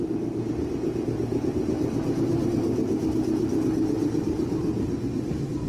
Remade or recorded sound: recorded